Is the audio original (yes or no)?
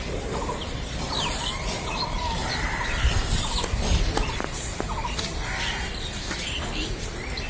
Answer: no